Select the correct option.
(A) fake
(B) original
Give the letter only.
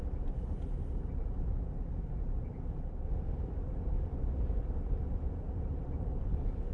B